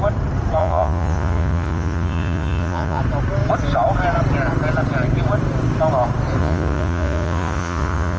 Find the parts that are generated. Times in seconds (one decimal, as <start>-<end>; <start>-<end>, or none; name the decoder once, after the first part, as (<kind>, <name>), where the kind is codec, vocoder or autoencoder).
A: 0.6-3.0 (vocoder, Vocos); 6.4-8.2